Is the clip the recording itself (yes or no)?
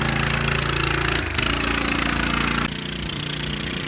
yes